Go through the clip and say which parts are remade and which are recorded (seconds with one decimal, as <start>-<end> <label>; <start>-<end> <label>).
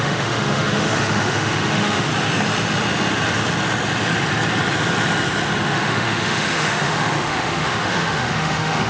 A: 0.0-2.1 remade; 2.1-5.6 recorded; 5.6-8.9 remade